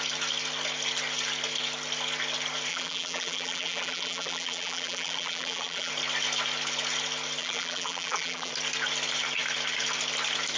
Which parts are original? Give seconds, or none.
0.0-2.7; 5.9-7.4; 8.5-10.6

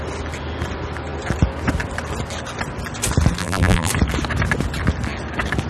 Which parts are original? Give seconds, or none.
0.0-3.4; 3.9-5.7

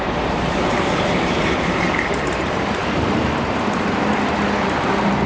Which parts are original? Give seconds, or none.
2.8-4.6

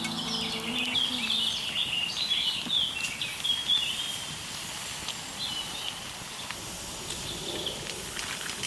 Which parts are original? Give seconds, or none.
0.0-8.7